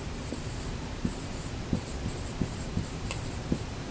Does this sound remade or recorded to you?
remade